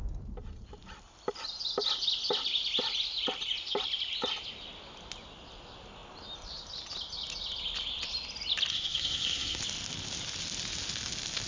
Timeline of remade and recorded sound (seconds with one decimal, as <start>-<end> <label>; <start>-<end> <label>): 0.0-8.7 recorded; 8.7-9.6 remade; 9.6-11.5 recorded